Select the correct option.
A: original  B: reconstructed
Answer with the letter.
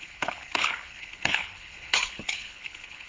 B